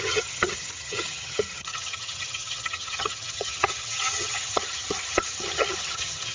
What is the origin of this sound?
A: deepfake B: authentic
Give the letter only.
A